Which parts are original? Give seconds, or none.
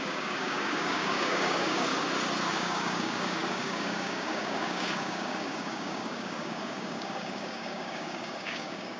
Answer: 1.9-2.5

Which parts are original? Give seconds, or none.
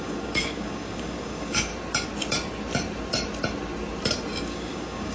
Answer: 1.7-4.4